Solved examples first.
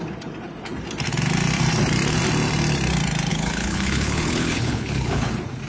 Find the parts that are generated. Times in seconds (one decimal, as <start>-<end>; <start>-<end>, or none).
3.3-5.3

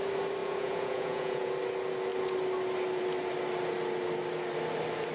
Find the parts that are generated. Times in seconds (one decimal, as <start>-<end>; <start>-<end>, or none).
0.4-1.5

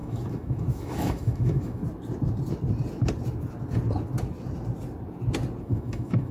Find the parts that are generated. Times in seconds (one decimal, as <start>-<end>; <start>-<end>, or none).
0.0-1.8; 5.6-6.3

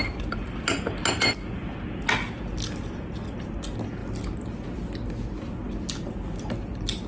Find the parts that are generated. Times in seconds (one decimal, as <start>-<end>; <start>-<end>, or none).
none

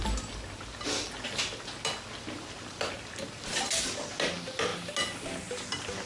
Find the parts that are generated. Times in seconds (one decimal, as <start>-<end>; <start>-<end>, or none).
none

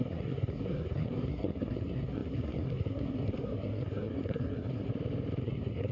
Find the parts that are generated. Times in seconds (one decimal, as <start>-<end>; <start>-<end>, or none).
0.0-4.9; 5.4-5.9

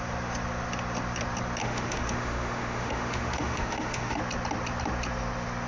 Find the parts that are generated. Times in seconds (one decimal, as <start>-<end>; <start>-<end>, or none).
1.6-4.2